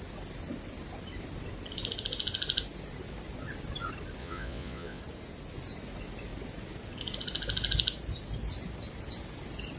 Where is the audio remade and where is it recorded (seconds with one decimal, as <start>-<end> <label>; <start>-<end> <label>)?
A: 0.0-4.2 recorded; 4.2-5.0 remade; 5.0-9.8 recorded